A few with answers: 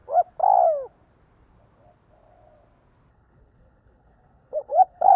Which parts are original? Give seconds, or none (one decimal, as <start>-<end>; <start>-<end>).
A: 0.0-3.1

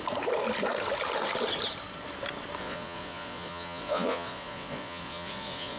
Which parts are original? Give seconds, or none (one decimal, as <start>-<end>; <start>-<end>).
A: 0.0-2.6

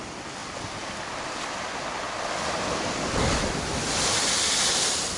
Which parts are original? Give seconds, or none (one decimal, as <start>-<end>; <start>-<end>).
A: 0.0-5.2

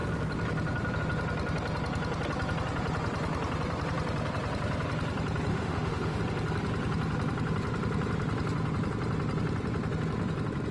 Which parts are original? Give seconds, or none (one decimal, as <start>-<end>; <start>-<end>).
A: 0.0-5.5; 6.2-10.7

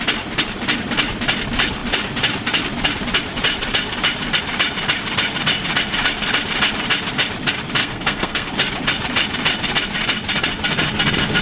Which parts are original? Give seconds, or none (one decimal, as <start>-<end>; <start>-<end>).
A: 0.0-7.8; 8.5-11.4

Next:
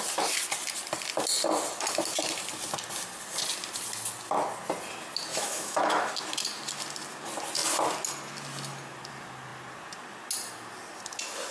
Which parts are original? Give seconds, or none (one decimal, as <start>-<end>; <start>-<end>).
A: 0.0-5.3; 6.1-11.5

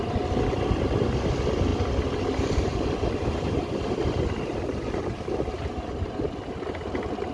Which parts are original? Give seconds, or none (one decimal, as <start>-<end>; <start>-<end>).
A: 0.0-7.3

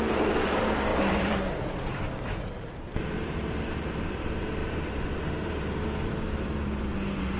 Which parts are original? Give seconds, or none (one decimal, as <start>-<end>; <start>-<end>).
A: none